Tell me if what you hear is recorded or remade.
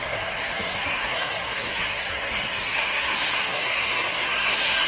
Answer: remade